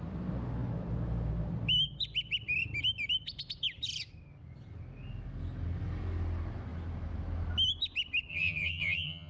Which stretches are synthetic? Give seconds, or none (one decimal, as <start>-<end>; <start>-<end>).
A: 8.3-9.3